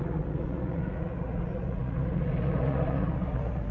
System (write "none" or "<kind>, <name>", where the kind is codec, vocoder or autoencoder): vocoder, Vocos